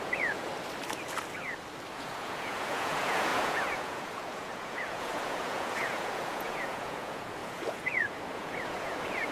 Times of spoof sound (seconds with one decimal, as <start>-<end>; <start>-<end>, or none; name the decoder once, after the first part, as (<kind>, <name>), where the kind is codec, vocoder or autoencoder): 0.0-0.5 (vocoder, Vocos); 1.9-9.3